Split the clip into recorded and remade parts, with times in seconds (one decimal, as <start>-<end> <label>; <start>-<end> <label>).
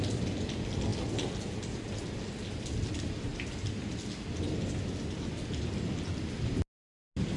0.0-7.4 recorded